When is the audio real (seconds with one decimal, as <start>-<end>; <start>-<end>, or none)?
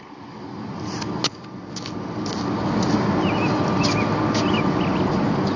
0.0-5.6